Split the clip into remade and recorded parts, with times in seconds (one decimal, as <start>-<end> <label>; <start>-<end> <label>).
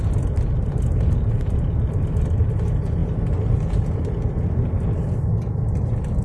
0.0-6.2 recorded